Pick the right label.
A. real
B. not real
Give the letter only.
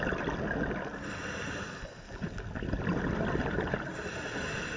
A